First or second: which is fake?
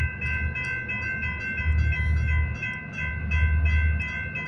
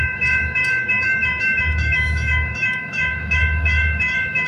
second